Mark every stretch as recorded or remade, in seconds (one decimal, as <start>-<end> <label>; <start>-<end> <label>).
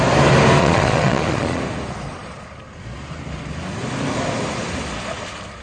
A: 0.0-0.6 recorded; 0.6-1.6 remade; 1.6-5.6 recorded